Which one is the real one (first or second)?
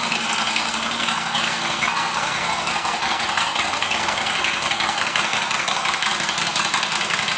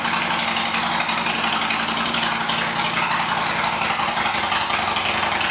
second